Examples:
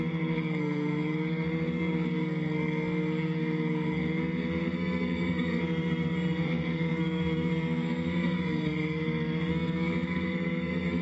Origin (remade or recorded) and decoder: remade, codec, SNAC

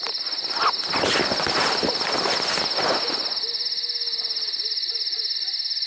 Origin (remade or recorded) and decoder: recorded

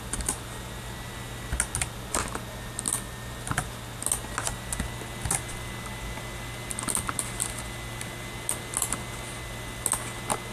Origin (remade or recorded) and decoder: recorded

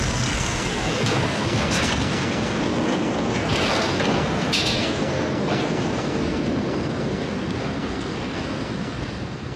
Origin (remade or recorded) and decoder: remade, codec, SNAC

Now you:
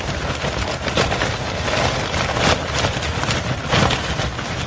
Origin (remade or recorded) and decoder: recorded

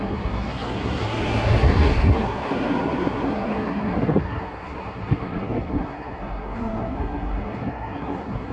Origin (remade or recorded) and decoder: remade, codec, SNAC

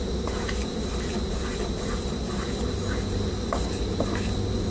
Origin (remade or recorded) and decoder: recorded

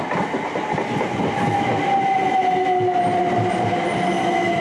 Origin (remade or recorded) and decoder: recorded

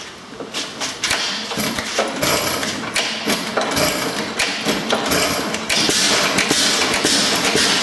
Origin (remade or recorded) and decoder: recorded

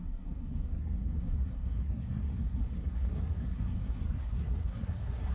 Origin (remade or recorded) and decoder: remade, codec, SNAC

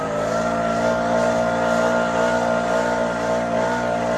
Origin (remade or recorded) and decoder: recorded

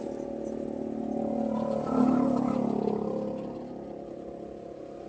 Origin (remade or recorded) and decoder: recorded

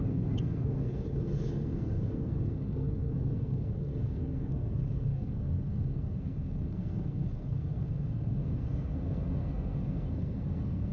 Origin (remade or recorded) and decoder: remade, codec, SNAC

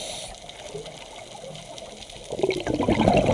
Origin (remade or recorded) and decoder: recorded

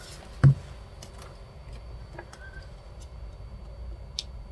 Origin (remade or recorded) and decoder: recorded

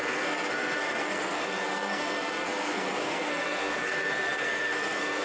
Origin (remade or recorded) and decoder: remade, codec, SNAC